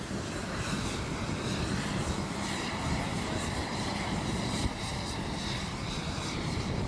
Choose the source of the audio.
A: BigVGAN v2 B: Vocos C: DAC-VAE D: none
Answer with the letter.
A